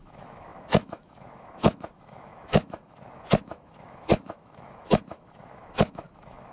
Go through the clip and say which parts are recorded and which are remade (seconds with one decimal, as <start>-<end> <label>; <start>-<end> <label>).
0.0-6.5 remade